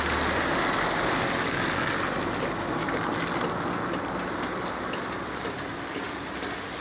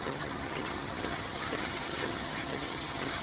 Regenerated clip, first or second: second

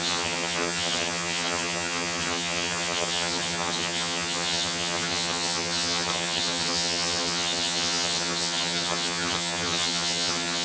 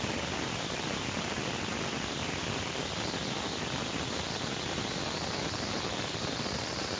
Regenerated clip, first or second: first